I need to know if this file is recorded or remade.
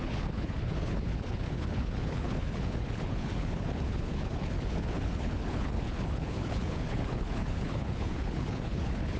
remade